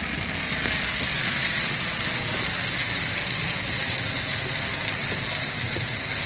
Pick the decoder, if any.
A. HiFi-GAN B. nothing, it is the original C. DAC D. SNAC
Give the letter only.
B